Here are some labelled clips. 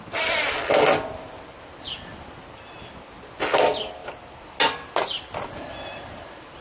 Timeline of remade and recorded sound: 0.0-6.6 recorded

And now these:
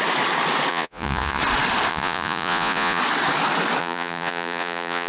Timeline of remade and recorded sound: 0.0-0.7 recorded; 0.7-1.4 remade; 1.4-1.9 recorded; 1.9-3.0 remade; 3.0-3.8 recorded; 3.8-5.1 remade

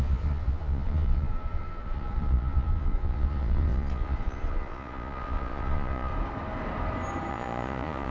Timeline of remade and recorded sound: 0.0-6.1 remade; 6.1-7.3 recorded; 7.3-8.1 remade

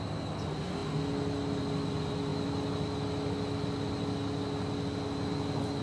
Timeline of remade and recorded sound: 0.0-5.8 recorded

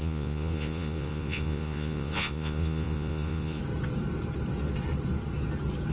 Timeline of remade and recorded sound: 0.0-3.6 remade; 3.6-5.9 recorded